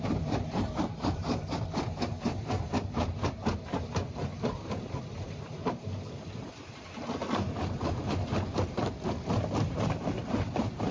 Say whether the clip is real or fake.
fake